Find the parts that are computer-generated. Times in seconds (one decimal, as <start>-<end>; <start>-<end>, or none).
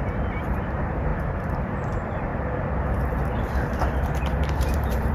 0.0-2.3; 4.0-5.1